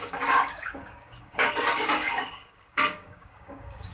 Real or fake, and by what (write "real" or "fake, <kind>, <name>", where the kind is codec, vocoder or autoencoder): fake, codec, DAC